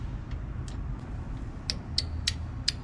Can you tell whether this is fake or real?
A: real